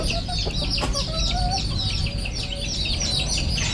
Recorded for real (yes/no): yes